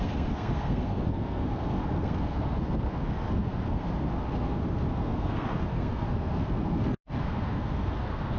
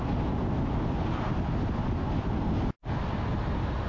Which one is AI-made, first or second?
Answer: first